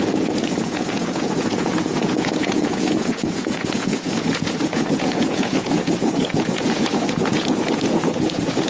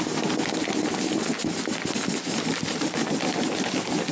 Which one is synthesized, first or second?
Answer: first